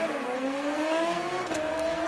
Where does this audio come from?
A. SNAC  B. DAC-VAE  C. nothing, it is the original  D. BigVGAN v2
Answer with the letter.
A